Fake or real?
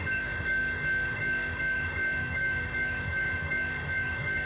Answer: fake